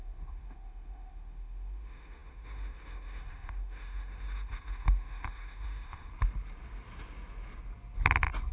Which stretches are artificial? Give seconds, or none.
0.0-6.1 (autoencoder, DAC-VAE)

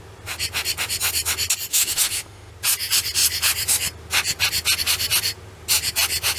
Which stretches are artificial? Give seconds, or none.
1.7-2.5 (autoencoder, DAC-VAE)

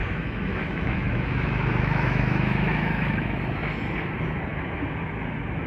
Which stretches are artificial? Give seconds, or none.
0.0-3.4 (autoencoder, DAC-VAE)

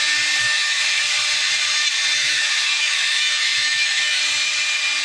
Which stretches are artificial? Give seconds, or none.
0.4-1.0 (autoencoder, DAC-VAE); 2.2-4.2

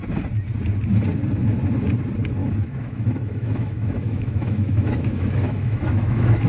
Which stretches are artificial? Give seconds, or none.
2.4-6.5 (autoencoder, DAC-VAE)